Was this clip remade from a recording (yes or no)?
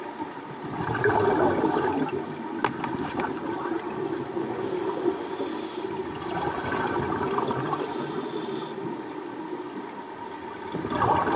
no